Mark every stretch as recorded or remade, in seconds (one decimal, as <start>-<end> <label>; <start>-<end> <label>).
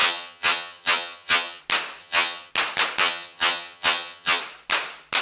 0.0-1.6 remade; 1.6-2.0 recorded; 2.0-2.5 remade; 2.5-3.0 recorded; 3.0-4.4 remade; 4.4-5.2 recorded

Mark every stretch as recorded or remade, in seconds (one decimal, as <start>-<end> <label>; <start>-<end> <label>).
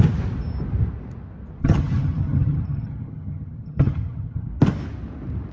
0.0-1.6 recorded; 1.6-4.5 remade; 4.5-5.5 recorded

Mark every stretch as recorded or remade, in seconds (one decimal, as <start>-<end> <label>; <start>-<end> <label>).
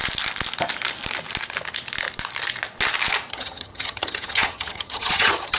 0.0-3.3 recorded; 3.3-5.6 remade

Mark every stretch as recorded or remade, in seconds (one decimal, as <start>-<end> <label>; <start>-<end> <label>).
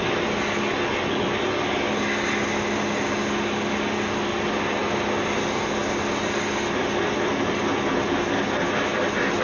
0.0-9.4 recorded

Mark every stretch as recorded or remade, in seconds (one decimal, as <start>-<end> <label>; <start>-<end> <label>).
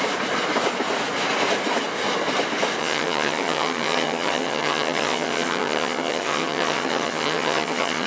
0.0-2.8 recorded; 2.8-8.1 remade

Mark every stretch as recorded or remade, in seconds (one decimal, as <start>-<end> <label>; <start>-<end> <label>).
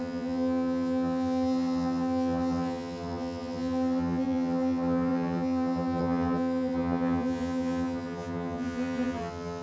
0.0-9.6 remade